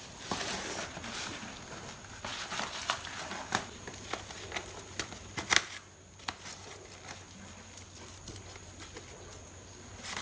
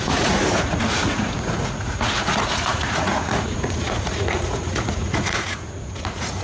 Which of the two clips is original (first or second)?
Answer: first